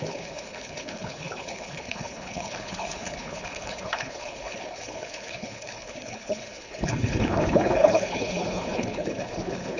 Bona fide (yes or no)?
no